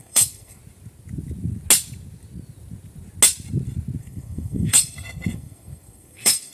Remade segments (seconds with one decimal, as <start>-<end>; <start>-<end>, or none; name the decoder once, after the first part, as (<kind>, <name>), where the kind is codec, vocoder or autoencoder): 0.0-0.6 (codec, SNAC); 4.0-6.5